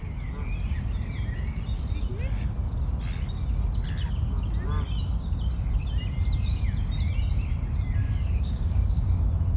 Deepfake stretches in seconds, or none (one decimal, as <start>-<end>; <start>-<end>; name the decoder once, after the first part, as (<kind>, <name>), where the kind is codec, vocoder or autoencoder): 8.0-9.2 (codec, DAC)